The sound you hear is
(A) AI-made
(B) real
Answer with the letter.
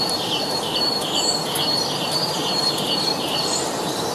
A